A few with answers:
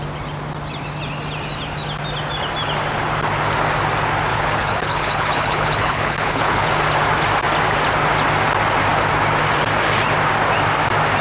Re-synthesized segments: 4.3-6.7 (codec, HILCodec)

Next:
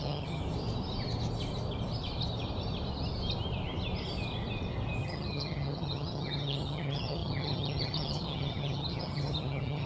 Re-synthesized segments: 0.0-0.4 (vocoder, HiFi-GAN); 5.0-9.9

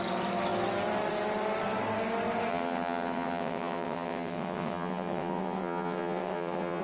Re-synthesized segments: 2.5-6.8 (vocoder, WaveNeXt)

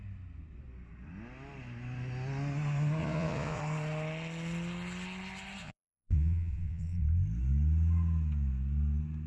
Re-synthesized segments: 3.0-3.6 (vocoder, Vocos); 5.6-7.0

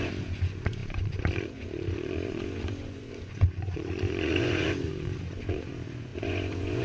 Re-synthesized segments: 0.0-6.8 (vocoder, Vocos)